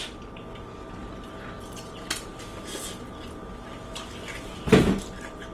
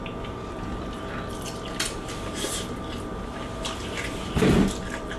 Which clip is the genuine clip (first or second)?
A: first